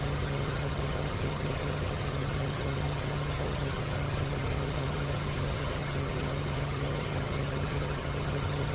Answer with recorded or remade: remade